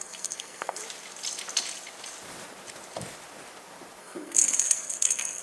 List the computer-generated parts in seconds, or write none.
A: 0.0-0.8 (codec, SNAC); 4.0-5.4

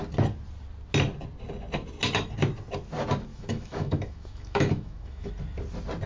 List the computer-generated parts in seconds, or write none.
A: 3.3-5.3 (autoencoder, DAC-VAE)

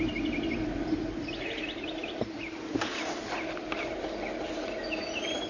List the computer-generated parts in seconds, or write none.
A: none

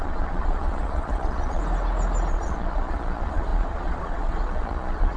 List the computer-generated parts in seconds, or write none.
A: 0.0-1.6 (vocoder, Vocos); 2.3-5.2

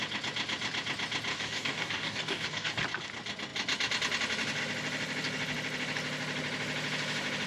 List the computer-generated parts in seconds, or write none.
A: 1.3-2.8 (codec, DAC)

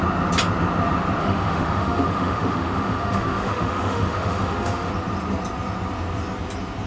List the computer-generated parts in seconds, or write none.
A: 1.2-4.9 (autoencoder, DAC-VAE)